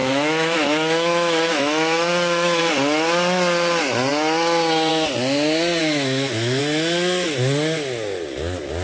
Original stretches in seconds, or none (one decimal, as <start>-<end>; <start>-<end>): 2.6-5.8; 6.6-8.8